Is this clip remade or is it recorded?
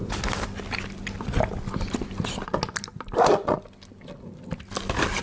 recorded